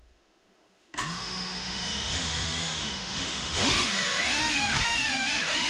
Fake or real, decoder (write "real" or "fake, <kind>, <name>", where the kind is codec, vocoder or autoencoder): fake, autoencoder, DAC-VAE